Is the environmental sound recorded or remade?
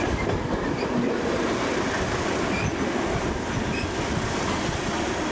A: recorded